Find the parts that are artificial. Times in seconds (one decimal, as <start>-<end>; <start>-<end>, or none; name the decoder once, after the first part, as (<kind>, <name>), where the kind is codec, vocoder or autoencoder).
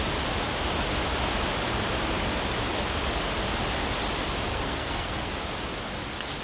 4.5-5.3 (codec, SNAC)